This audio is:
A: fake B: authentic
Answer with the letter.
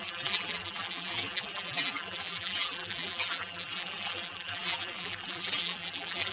A